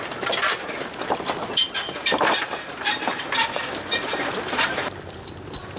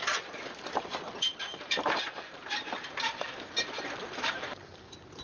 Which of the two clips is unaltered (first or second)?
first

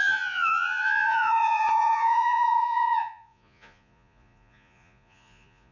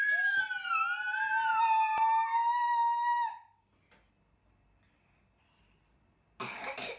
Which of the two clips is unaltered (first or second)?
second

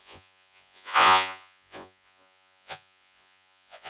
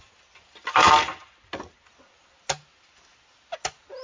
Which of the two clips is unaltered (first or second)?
second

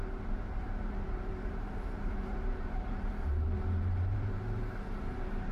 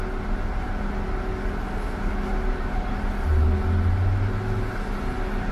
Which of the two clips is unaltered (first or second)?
second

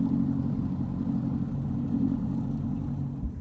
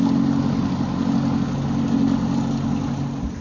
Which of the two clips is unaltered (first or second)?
second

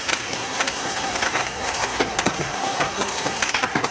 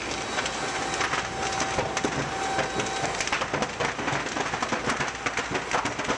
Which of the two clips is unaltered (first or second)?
second